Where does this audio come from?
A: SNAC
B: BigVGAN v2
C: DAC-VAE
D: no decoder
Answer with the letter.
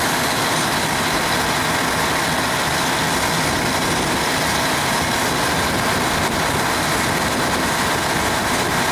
D